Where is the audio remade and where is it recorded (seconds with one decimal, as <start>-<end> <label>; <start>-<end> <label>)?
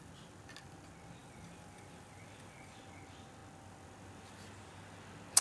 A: 0.0-1.2 recorded; 1.2-2.8 remade; 2.8-5.4 recorded